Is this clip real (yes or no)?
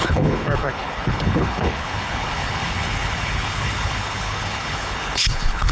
no